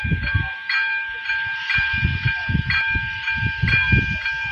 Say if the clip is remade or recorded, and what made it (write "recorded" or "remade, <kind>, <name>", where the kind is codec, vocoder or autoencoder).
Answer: recorded